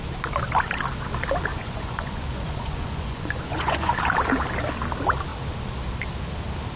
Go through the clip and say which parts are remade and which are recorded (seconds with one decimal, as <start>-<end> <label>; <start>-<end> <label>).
0.0-1.5 recorded; 1.5-3.9 remade; 3.9-6.8 recorded